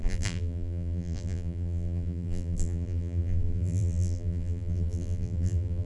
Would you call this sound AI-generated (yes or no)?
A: yes